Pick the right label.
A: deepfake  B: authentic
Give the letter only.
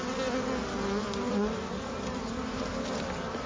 B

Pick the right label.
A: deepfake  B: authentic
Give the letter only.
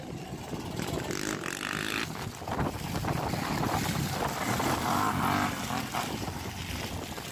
B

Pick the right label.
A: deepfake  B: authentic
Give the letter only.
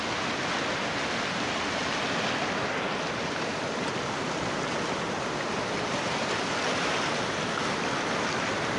B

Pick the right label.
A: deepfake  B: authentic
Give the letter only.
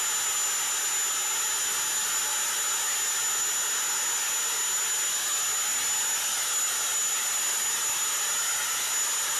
B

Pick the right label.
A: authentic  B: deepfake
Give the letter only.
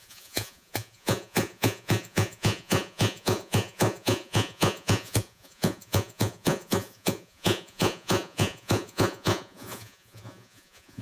B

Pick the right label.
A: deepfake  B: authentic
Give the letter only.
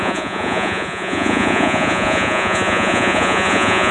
A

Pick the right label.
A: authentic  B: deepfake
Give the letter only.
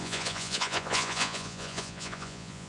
B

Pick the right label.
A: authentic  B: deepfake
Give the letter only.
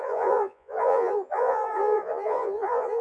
B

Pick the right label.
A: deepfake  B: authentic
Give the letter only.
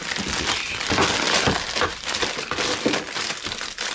B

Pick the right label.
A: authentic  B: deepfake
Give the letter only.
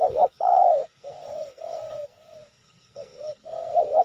B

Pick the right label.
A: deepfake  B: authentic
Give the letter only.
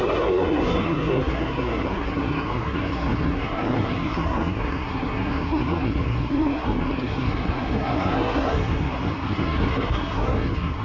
A